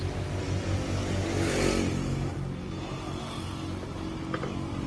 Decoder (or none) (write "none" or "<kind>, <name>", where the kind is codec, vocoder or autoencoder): none